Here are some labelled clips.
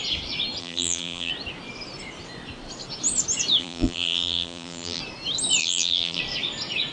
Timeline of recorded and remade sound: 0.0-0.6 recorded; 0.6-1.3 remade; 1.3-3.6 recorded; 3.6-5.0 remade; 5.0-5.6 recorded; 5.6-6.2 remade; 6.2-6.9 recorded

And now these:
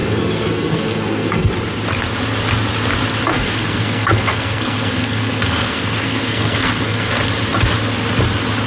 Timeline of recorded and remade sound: 0.0-1.5 remade; 1.5-3.3 recorded; 3.3-7.2 remade; 7.2-8.7 recorded

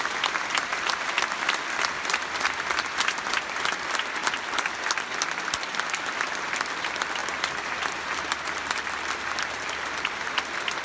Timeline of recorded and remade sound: 0.0-10.8 recorded

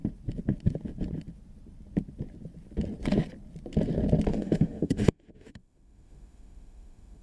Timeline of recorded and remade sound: 0.0-4.3 recorded; 4.3-7.2 remade

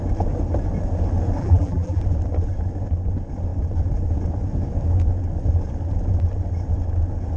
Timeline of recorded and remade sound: 0.0-1.4 recorded; 1.4-2.0 remade; 2.0-7.4 recorded

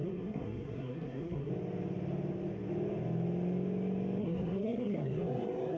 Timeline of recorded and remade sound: 0.0-1.5 remade; 1.5-4.2 recorded; 4.2-5.8 remade

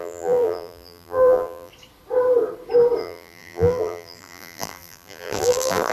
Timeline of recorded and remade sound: 0.0-1.7 remade; 1.7-3.0 recorded; 3.0-5.9 remade